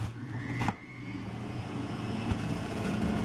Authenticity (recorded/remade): remade